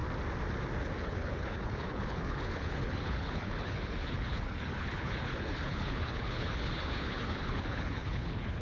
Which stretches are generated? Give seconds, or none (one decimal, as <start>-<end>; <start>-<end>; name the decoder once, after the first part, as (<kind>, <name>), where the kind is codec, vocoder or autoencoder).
1.0-8.6 (codec, HILCodec)